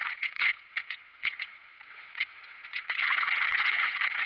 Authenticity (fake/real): fake